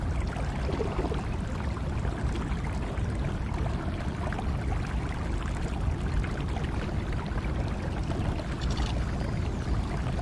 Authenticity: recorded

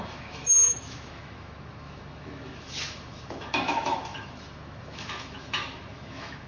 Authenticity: remade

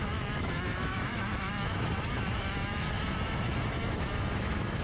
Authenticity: remade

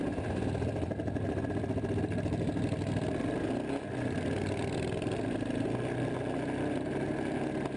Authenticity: recorded